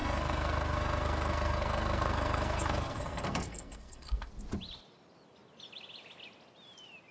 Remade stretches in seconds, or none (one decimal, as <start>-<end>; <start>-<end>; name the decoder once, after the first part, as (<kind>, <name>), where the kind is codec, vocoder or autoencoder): 0.0-4.3 (codec, SNAC)